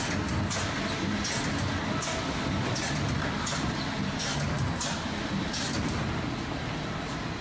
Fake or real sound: real